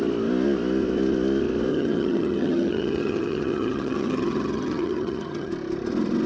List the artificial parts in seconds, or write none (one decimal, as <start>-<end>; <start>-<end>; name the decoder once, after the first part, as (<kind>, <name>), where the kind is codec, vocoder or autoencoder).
1.7-5.5 (vocoder, HiFi-GAN)